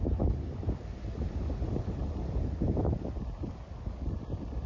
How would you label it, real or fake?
real